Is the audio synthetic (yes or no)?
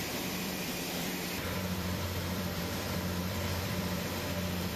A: yes